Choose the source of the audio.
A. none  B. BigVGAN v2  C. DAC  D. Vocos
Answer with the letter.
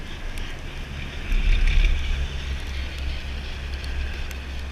A